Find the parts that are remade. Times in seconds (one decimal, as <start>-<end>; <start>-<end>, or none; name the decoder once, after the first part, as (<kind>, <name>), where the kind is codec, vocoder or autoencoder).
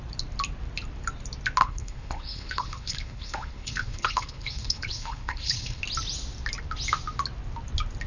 1.6-5.8 (codec, HILCodec)